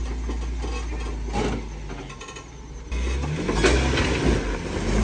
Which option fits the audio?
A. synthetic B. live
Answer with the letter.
B